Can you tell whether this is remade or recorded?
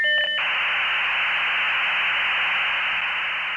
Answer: recorded